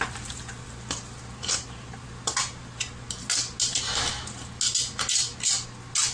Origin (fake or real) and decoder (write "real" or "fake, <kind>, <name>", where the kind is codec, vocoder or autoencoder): real